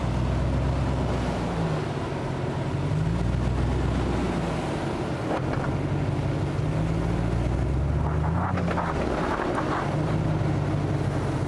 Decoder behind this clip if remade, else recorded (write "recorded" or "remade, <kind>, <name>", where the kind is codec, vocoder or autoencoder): recorded